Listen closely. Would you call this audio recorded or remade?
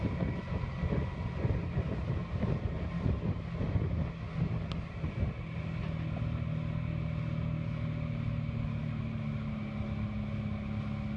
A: recorded